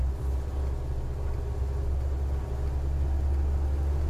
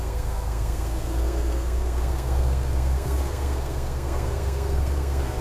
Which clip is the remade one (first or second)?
second